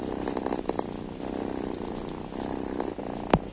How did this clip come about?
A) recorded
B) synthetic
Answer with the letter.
A